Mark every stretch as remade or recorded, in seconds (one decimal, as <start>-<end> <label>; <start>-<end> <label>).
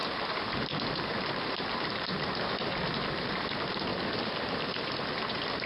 0.0-5.7 recorded